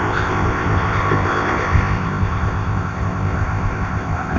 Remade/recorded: remade